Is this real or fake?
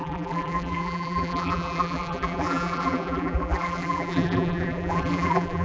fake